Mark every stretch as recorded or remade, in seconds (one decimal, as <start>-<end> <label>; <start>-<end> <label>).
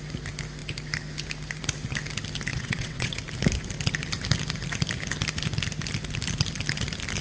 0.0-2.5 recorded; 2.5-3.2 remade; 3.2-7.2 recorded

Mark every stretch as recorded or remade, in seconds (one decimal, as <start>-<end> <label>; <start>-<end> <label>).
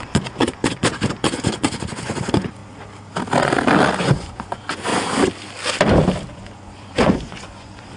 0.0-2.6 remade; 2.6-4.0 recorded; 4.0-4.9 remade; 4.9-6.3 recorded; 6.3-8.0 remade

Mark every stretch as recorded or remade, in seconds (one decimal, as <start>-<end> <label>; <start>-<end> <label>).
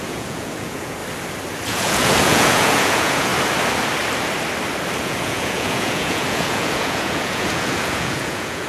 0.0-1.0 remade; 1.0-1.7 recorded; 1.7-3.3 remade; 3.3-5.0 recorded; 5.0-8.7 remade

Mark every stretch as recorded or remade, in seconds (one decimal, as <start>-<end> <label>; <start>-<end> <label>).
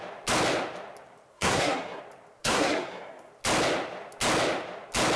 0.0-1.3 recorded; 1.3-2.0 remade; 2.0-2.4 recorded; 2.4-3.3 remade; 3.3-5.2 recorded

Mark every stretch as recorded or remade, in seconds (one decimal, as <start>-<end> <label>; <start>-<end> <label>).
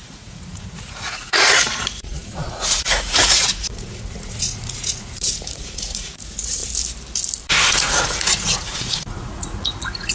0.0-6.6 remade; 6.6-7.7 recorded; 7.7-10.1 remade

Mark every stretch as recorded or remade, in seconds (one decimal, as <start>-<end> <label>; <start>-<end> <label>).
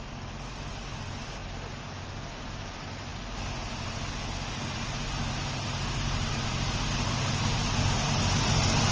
0.0-8.9 recorded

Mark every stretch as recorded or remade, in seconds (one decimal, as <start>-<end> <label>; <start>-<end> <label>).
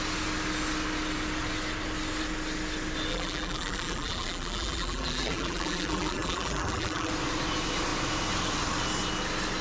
0.0-3.1 recorded; 3.1-7.1 remade; 7.1-9.6 recorded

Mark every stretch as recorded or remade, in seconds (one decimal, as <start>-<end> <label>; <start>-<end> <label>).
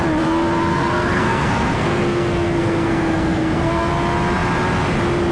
0.0-0.7 recorded; 0.7-3.9 remade; 3.9-5.3 recorded